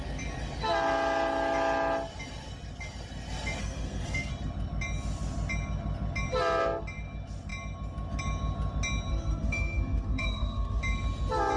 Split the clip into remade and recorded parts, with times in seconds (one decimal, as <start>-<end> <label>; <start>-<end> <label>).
0.0-3.6 recorded; 3.6-4.3 remade; 4.3-9.1 recorded; 9.1-10.8 remade; 10.8-11.6 recorded